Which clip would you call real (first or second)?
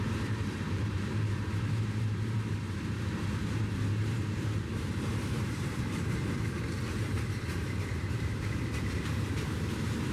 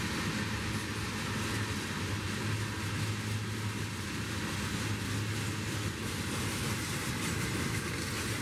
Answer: second